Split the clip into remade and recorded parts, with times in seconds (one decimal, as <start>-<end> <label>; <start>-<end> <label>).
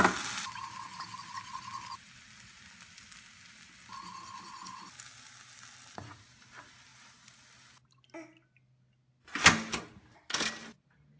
0.0-11.2 recorded